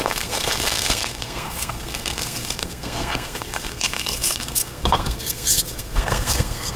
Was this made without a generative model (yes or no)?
no